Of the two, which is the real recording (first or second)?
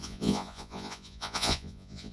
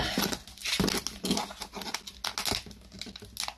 second